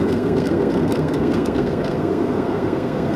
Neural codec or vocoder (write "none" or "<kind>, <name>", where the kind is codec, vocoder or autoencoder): codec, SNAC